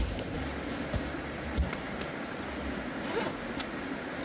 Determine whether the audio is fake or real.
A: real